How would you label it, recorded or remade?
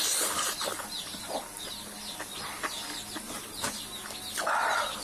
recorded